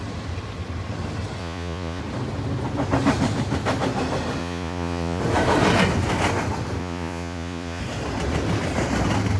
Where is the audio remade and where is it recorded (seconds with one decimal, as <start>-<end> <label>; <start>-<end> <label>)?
0.0-1.4 recorded; 1.4-2.0 remade; 2.0-4.4 recorded; 4.4-5.2 remade; 5.2-6.8 recorded; 6.8-7.8 remade; 7.8-9.4 recorded